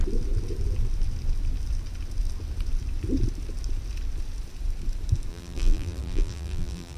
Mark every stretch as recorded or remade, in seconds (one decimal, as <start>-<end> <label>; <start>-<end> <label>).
0.0-5.3 recorded; 5.3-7.0 remade